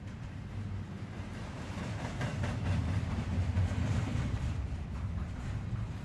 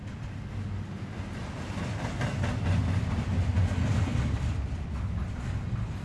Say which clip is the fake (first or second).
first